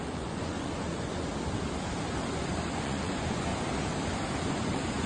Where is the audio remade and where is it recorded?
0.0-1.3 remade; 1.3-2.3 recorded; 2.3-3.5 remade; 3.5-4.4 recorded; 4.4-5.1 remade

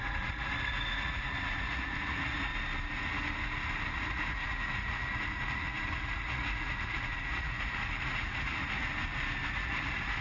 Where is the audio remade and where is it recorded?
0.0-2.5 remade; 2.5-3.9 recorded; 3.9-8.9 remade; 8.9-9.5 recorded; 9.5-10.2 remade

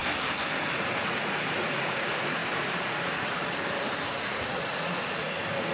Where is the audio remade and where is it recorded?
0.0-0.6 recorded; 0.6-5.7 remade

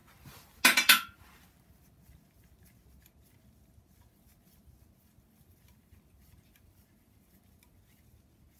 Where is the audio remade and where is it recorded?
0.0-8.6 recorded

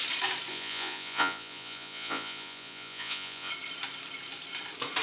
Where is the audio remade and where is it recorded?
0.0-0.5 recorded; 0.5-3.5 remade; 3.5-5.0 recorded

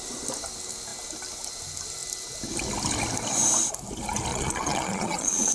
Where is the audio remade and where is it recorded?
0.0-4.3 recorded; 4.3-5.5 remade